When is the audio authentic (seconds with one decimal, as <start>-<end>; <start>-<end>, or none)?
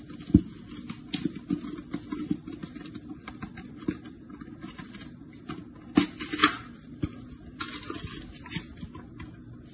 0.0-2.6; 5.4-6.4; 7.6-9.7